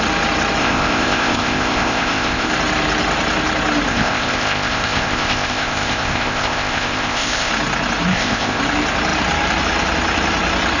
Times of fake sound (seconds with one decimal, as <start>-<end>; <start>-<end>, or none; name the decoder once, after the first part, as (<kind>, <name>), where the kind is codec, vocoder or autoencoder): 0.6-2.5 (codec, ZipCodec); 3.9-7.5; 8.1-8.6